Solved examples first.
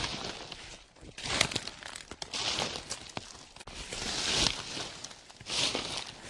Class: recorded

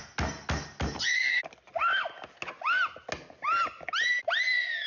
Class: recorded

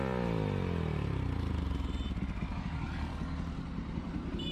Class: recorded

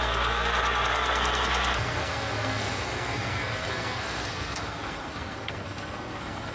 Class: remade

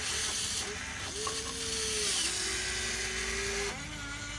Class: recorded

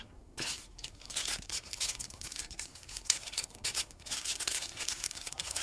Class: remade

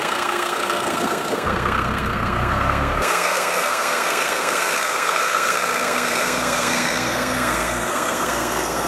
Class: remade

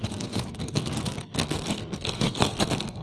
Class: remade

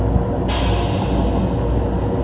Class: recorded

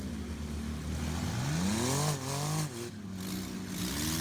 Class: recorded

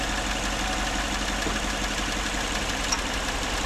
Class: recorded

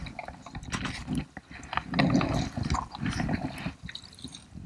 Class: recorded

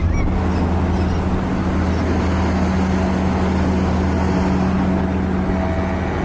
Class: recorded